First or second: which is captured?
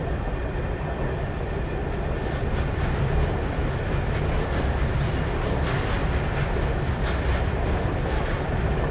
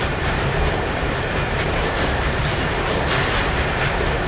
first